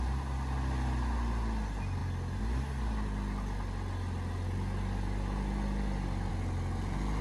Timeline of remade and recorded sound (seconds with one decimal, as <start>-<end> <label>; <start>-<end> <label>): 0.0-7.2 recorded